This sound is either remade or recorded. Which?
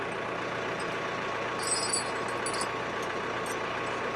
recorded